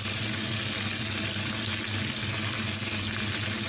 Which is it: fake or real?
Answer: real